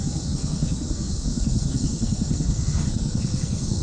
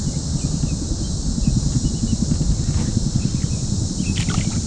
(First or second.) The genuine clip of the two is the second